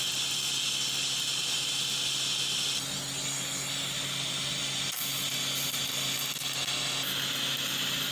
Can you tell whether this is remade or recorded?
recorded